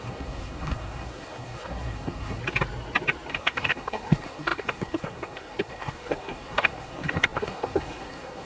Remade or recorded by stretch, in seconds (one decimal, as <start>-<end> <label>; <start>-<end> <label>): 0.0-2.4 remade; 2.4-3.3 recorded; 3.3-8.5 remade